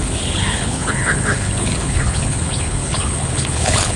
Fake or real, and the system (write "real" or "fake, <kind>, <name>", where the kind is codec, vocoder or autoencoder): fake, codec, HILCodec